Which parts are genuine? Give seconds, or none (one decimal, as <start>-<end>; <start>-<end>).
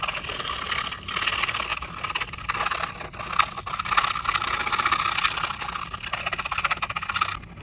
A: 0.0-7.6